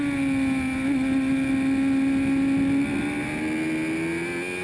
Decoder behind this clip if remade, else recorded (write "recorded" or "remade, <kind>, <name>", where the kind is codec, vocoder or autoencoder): recorded